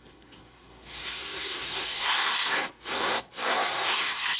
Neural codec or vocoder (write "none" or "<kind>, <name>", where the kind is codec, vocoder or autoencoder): codec, SNAC